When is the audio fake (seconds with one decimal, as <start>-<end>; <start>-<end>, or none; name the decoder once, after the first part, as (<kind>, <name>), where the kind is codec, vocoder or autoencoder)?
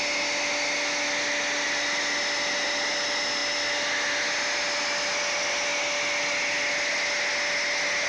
none